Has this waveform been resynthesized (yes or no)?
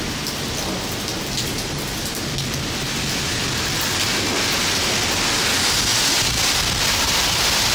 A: no